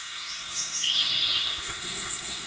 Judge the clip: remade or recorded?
remade